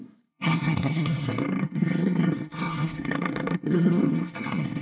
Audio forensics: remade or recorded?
remade